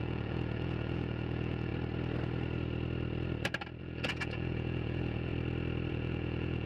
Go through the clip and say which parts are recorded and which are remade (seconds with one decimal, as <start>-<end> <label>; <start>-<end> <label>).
0.0-1.7 remade; 1.7-3.8 recorded; 3.8-5.3 remade; 5.3-5.9 recorded; 5.9-6.7 remade